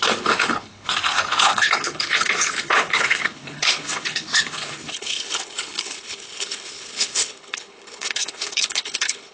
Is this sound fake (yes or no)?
yes